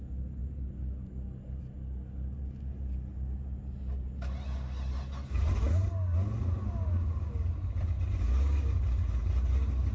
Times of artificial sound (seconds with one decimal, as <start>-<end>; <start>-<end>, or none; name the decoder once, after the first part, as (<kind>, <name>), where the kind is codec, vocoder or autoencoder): none

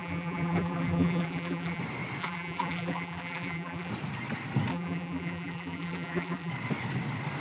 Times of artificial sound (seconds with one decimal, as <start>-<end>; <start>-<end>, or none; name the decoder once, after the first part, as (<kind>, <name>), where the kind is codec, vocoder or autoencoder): 0.0-1.8 (vocoder, BigVGAN v2); 2.2-3.9; 4.7-6.5

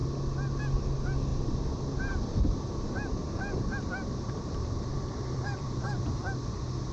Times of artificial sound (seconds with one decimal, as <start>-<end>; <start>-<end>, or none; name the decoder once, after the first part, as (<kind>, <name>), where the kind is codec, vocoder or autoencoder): 1.3-1.8 (vocoder, BigVGAN v2); 3.2-6.2

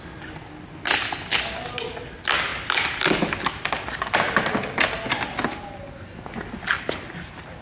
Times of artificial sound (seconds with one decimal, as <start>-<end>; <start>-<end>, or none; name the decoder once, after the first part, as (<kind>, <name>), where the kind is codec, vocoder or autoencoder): none

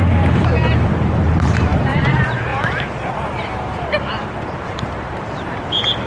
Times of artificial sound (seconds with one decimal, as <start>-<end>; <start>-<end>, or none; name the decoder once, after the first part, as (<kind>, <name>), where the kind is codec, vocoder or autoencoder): 0.0-6.1 (vocoder, BigVGAN v2)

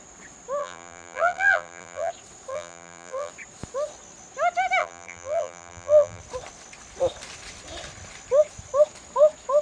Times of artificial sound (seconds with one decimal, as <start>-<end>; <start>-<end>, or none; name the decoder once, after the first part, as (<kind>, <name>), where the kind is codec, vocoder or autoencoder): 0.6-2.1 (vocoder, BigVGAN v2); 2.5-3.3; 4.8-6.2

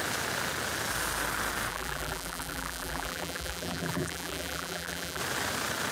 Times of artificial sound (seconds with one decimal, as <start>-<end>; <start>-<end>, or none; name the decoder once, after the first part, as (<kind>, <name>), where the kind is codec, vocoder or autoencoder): 1.7-5.2 (vocoder, BigVGAN v2)

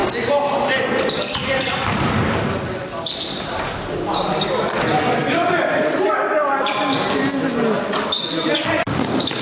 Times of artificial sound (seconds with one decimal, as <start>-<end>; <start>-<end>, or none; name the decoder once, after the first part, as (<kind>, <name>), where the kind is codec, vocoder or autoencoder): 0.0-3.9 (vocoder, BigVGAN v2); 5.2-6.7